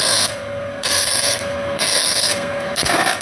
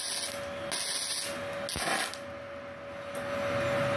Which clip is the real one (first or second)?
second